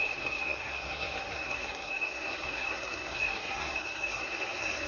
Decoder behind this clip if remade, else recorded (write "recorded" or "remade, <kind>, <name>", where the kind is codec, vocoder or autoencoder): remade, codec, SNAC